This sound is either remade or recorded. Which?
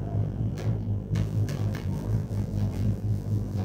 remade